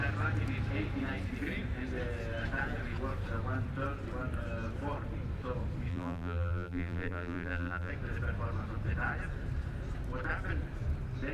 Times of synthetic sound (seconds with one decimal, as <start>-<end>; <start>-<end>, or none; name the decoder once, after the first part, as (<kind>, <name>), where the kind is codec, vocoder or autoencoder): 5.9-7.9 (vocoder, BigVGAN v2)